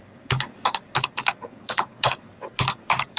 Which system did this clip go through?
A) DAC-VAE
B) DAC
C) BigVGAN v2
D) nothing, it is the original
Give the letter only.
B